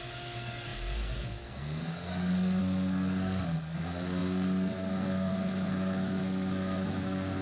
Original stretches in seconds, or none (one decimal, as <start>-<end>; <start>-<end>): none